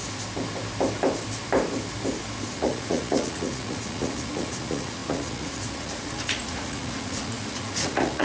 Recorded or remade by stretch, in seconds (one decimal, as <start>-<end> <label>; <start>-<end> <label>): 0.0-2.5 recorded; 2.5-8.2 remade